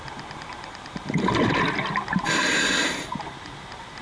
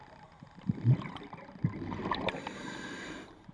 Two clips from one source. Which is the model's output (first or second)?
second